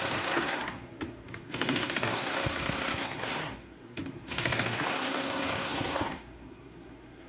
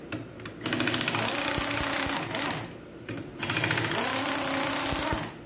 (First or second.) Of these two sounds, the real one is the second